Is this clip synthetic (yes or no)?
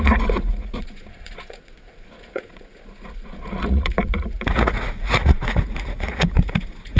yes